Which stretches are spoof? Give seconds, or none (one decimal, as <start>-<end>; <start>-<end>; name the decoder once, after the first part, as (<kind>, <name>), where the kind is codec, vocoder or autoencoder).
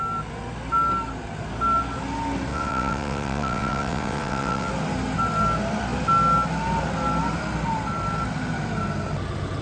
2.5-4.7 (vocoder, WaveNeXt)